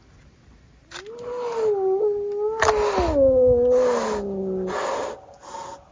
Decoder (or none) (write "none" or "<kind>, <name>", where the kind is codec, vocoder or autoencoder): none